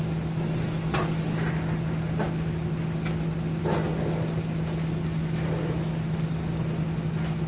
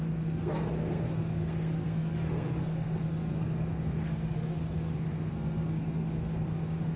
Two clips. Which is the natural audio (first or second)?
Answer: first